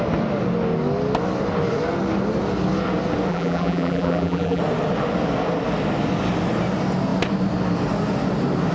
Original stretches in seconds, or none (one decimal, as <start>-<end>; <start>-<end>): 0.0-3.3; 4.6-8.7

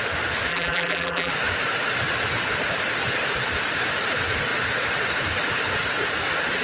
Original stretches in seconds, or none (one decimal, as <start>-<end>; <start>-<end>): 0.0-0.5; 1.3-6.6

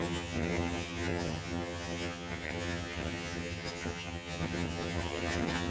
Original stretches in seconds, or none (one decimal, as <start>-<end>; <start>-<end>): none

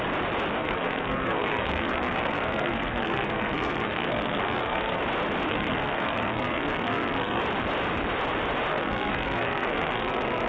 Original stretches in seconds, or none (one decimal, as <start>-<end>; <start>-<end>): 0.0-0.6; 5.0-5.5; 7.4-8.7

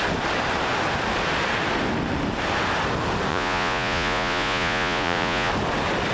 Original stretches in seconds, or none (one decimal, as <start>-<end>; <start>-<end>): 0.0-3.3; 5.5-6.1

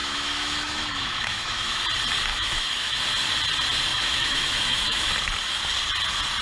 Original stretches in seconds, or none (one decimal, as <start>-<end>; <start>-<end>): 1.8-2.3; 3.0-3.9; 5.1-6.4